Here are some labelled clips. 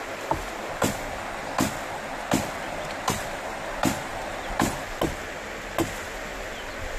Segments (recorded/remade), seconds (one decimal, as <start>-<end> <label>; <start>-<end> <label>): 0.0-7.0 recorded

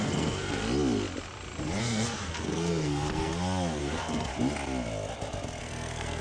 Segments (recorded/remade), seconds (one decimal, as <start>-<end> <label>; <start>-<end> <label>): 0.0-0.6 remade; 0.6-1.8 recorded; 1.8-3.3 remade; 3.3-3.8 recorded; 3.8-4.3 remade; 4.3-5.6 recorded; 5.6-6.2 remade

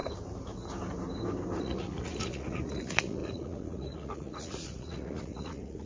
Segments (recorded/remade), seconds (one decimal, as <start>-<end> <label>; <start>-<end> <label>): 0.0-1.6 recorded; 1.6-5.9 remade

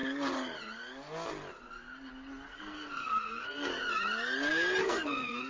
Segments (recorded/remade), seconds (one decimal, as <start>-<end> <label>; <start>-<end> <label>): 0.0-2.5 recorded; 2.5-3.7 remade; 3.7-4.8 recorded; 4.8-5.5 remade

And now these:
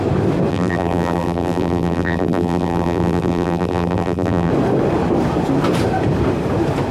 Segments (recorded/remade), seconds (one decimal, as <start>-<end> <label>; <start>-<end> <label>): 0.0-0.5 recorded; 0.5-4.5 remade; 4.5-6.9 recorded